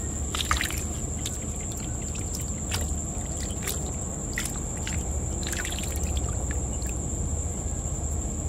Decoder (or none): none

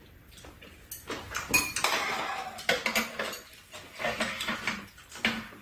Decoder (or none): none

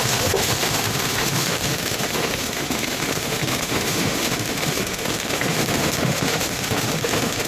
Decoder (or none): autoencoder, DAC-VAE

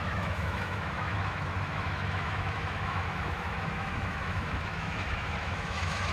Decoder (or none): autoencoder, DAC-VAE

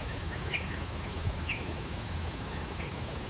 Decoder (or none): autoencoder, DAC-VAE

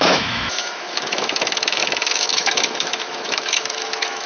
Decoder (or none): autoencoder, DAC-VAE